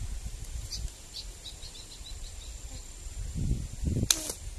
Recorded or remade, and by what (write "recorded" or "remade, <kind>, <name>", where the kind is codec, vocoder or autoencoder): recorded